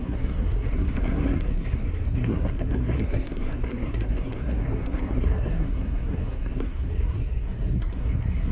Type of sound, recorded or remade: remade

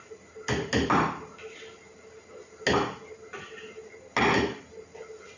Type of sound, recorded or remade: recorded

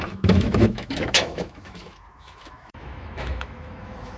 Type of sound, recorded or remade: remade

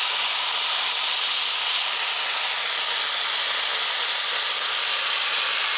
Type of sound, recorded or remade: recorded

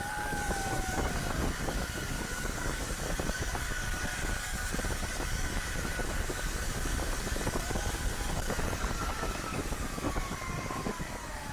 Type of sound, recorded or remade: remade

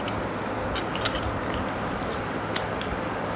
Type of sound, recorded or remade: recorded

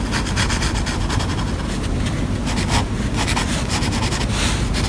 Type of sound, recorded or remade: recorded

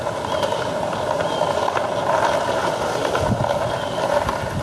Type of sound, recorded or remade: recorded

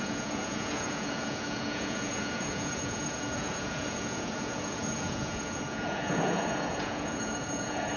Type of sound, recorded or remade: remade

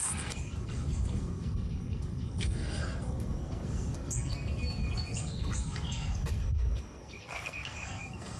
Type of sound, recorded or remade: remade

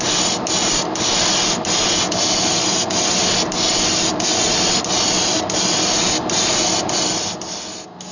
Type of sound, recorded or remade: recorded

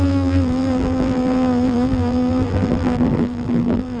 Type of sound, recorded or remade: remade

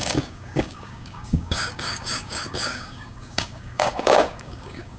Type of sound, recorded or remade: remade